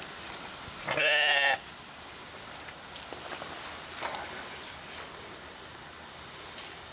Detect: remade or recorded recorded